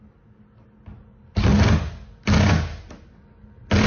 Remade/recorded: recorded